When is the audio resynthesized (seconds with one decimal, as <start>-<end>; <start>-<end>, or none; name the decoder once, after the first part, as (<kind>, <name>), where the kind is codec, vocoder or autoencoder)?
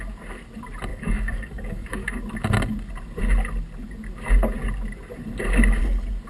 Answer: 0.9-2.2 (codec, DAC)